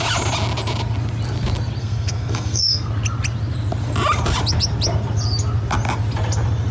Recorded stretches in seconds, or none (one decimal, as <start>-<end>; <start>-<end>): 0.0-1.8; 2.9-6.7